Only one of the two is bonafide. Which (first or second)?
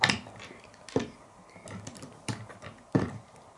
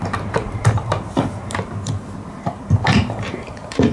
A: first